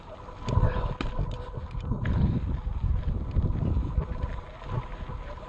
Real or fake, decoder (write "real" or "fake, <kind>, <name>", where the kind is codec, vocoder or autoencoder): real